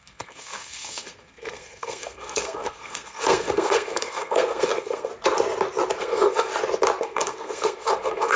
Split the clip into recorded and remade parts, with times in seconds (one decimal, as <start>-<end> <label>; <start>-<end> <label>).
0.0-5.1 remade; 5.1-6.0 recorded; 6.0-6.5 remade; 6.5-7.0 recorded; 7.0-8.4 remade